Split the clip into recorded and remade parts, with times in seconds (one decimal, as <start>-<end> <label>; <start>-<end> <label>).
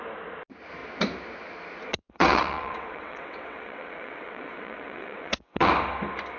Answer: 0.0-1.9 recorded; 1.9-5.7 remade; 5.7-6.4 recorded